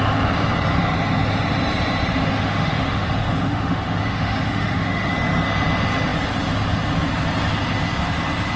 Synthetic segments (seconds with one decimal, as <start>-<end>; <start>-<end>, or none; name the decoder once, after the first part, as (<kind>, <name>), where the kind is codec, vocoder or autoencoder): 2.1-5.1 (autoencoder, DAC-VAE)